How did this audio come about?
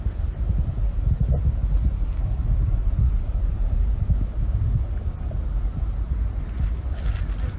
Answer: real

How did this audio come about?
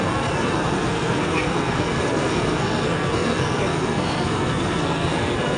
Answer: fake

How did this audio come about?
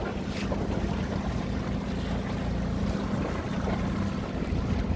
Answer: real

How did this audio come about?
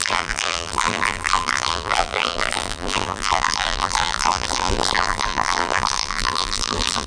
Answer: fake